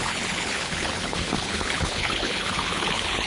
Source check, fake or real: fake